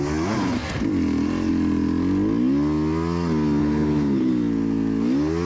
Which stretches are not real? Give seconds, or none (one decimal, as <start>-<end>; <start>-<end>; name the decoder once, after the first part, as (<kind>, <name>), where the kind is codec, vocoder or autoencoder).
3.6-4.3 (codec, HILCodec)